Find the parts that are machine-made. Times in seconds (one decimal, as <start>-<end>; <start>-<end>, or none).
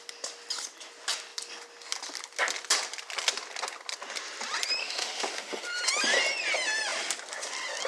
4.8-5.6